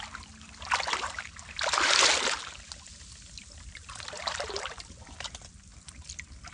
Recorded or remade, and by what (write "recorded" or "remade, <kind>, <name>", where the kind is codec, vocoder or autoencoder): recorded